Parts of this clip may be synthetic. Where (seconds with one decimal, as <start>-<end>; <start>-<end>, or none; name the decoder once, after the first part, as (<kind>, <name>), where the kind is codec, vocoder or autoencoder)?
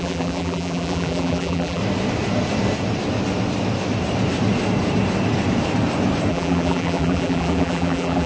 0.0-1.8 (vocoder, BigVGAN v2); 6.3-8.3